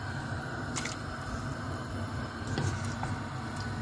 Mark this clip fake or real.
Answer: real